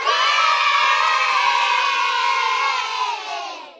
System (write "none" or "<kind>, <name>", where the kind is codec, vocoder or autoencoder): vocoder, Vocos